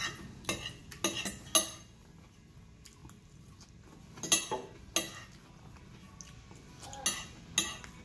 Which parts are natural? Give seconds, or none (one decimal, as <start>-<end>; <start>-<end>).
0.0-8.0